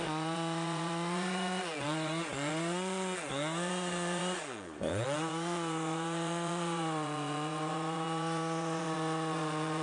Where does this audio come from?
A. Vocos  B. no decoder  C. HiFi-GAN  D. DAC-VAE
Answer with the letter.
A